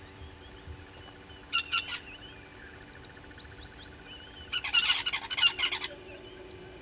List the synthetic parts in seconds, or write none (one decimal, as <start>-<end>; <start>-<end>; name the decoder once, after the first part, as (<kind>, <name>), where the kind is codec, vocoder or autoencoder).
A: none